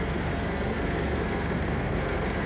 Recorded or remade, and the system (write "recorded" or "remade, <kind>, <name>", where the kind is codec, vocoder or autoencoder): remade, codec, SNAC